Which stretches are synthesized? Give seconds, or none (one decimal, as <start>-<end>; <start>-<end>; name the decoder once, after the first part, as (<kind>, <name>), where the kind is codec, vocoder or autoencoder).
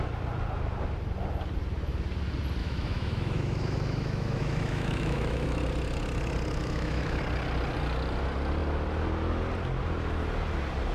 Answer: 2.6-5.6 (autoencoder, DAC-VAE); 6.6-7.2